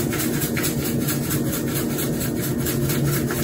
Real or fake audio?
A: real